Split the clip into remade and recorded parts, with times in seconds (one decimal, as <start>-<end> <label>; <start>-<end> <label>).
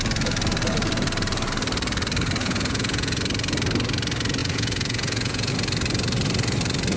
0.0-2.4 recorded; 2.4-3.2 remade; 3.2-4.4 recorded; 4.4-5.5 remade; 5.5-7.0 recorded